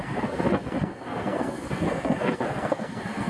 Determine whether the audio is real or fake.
fake